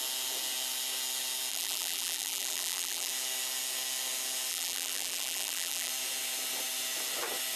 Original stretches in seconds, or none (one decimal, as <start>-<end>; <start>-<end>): 0.0-1.5; 3.1-4.5; 5.9-7.6